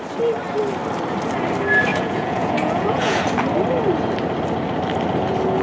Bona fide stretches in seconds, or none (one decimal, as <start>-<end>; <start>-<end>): 0.0-1.9; 3.2-5.6